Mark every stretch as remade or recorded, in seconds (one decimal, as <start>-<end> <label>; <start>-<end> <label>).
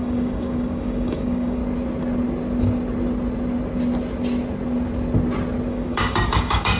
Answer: 0.0-1.6 remade; 1.6-5.7 recorded; 5.7-6.8 remade